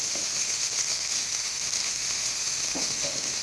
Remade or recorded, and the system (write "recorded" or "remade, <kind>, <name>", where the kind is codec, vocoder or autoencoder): remade, autoencoder, DAC-VAE